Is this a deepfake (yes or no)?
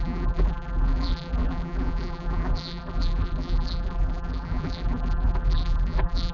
yes